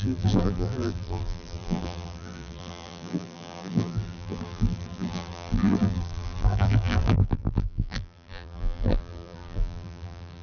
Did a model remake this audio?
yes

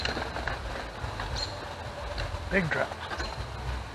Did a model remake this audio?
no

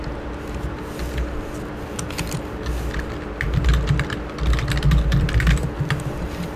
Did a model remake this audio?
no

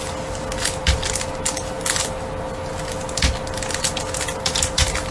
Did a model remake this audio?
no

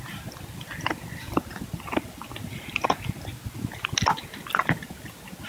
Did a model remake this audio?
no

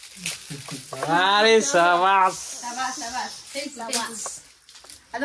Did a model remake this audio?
no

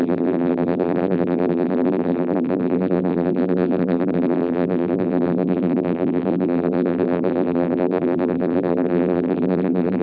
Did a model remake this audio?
yes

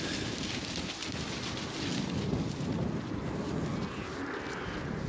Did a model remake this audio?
no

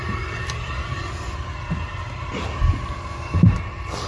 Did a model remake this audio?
yes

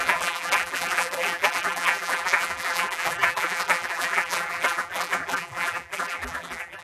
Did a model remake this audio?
yes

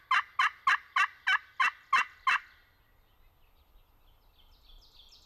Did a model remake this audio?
no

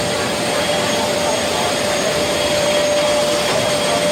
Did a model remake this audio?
yes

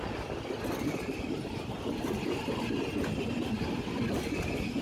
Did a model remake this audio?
no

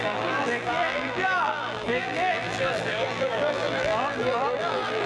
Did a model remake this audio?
yes